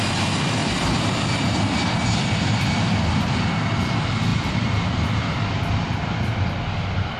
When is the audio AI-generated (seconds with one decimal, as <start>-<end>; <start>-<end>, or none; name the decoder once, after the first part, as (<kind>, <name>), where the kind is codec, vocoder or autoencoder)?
0.6-2.6 (vocoder, BigVGAN v2); 4.3-6.4